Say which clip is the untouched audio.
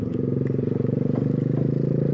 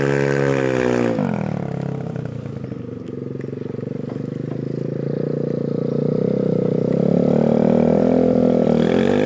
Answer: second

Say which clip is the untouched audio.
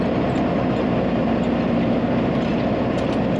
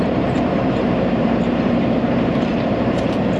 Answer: first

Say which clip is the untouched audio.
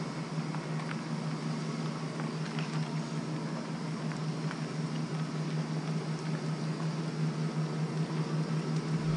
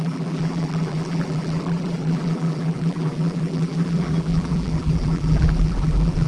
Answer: first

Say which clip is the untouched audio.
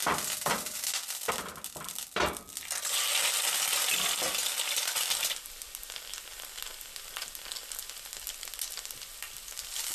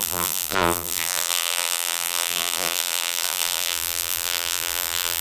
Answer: first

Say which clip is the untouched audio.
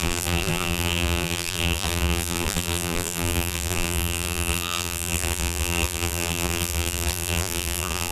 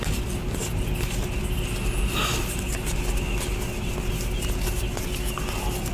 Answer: second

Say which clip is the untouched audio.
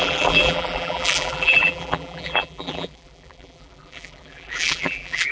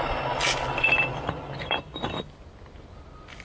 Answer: second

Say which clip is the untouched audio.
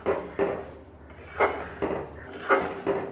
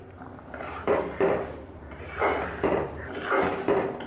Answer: first